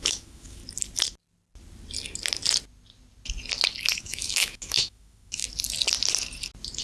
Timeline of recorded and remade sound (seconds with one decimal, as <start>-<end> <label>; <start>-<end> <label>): 0.0-0.6 remade; 0.6-4.0 recorded; 4.0-5.4 remade; 5.4-6.8 recorded